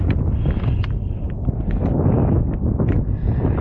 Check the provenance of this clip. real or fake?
real